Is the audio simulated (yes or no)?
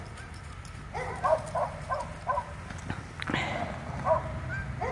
no